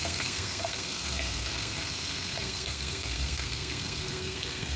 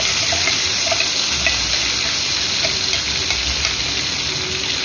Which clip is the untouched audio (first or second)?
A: second